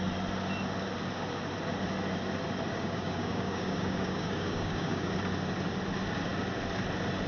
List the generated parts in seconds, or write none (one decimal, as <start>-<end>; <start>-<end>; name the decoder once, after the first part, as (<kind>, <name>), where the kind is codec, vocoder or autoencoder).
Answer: 2.7-5.1 (codec, DAC)